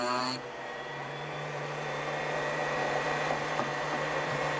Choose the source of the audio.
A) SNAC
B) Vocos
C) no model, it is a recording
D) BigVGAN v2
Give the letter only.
D